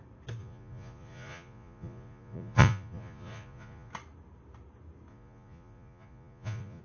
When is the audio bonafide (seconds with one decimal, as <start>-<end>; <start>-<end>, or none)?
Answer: 0.0-0.4; 3.9-5.1